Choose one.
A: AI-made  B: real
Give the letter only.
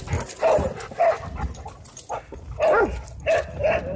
B